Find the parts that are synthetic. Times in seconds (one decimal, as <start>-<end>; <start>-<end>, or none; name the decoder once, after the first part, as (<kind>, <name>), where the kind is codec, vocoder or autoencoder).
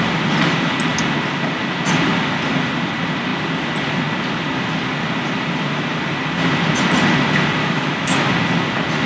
7.6-8.3 (autoencoder, DAC-VAE)